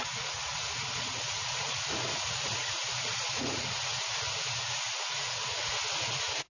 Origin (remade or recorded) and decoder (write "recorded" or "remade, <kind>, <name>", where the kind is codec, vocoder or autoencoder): remade, vocoder, Vocos